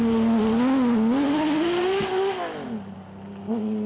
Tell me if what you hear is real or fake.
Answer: real